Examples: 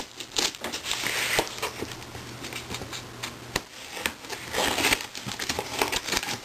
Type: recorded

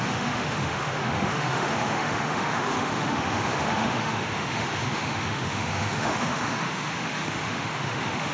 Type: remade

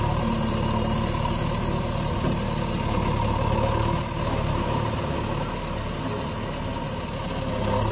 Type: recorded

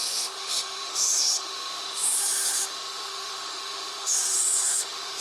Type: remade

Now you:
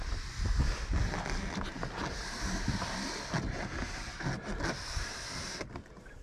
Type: recorded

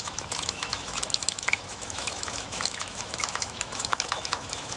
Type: remade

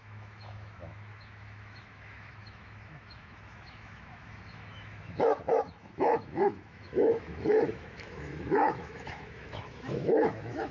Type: remade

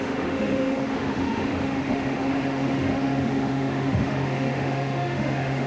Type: remade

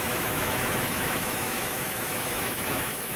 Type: remade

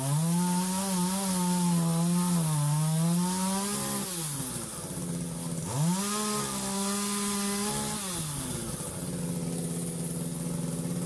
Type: recorded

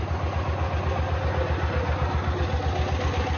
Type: recorded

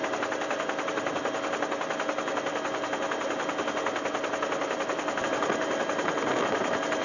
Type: recorded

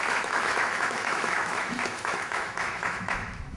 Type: remade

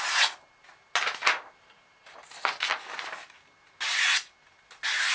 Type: recorded